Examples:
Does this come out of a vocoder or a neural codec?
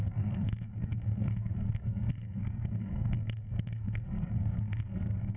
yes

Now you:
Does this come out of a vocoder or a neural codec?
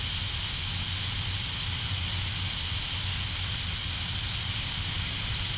no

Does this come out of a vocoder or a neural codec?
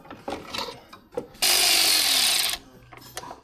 no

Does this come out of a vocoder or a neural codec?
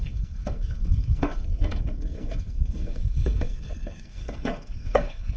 yes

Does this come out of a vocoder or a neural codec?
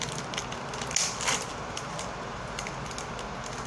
no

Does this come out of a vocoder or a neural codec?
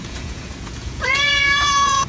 yes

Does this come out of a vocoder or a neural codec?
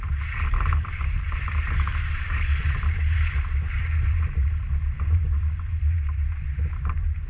yes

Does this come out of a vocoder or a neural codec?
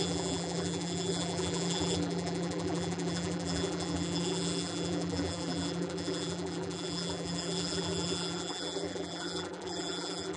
yes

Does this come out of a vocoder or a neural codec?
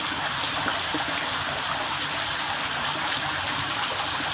no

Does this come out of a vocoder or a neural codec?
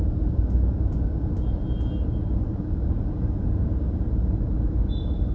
no